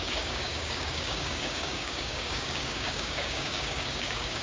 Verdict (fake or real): fake